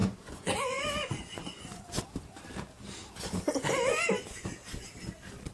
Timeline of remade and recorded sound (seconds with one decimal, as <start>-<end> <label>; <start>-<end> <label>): 0.0-2.0 remade; 2.0-5.5 recorded